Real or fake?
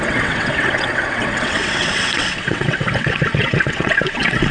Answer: fake